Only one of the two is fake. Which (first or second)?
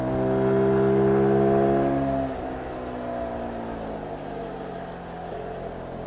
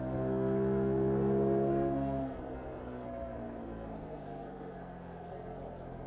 second